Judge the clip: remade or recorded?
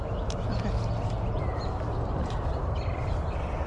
recorded